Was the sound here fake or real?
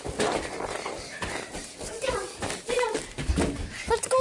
real